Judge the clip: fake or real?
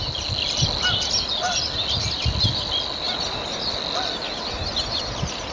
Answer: real